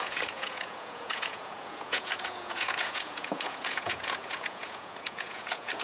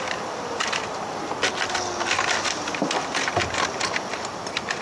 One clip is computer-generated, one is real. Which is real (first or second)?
second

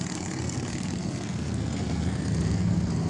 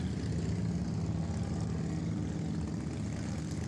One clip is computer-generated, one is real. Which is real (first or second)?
second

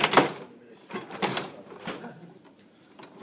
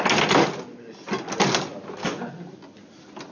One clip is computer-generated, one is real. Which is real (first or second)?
second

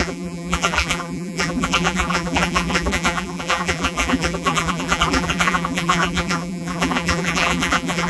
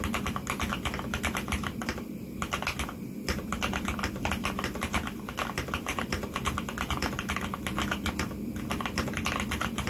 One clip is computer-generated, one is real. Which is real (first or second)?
second